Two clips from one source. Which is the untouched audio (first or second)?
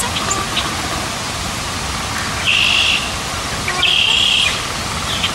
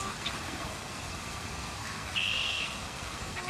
first